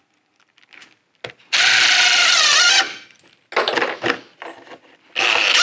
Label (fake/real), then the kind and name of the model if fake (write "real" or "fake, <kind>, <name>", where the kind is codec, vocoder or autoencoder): real